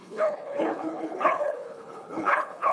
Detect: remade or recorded remade